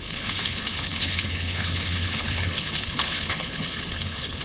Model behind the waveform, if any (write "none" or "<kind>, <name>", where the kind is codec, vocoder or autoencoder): codec, HILCodec